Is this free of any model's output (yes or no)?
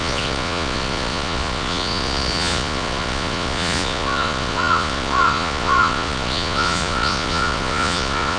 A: no